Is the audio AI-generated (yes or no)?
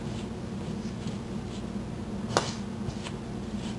no